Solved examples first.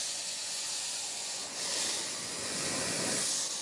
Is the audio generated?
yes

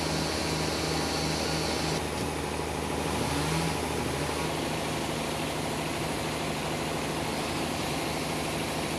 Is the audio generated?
no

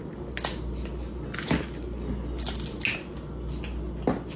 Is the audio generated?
no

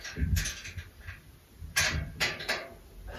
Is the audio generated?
no